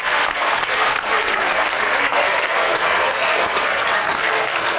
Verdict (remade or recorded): remade